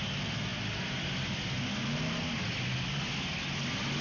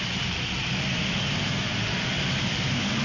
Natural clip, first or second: first